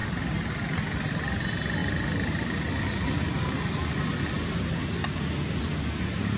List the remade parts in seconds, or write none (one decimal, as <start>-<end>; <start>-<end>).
none